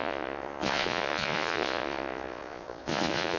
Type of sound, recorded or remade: remade